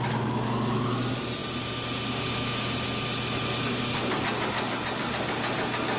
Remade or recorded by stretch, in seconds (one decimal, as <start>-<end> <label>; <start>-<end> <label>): 0.0-6.0 recorded